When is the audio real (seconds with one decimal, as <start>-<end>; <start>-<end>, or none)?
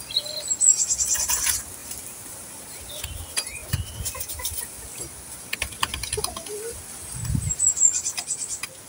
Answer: 0.0-1.8; 2.9-8.9